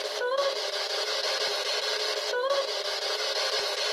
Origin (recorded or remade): recorded